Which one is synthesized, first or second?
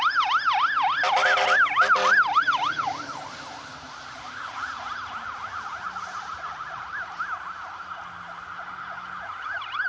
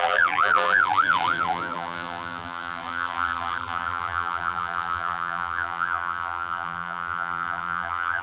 second